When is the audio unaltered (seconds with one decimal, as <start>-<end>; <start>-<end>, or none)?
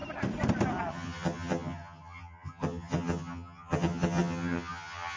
0.0-0.9